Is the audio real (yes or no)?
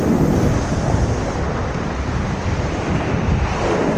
yes